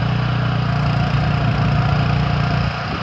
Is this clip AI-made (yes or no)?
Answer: no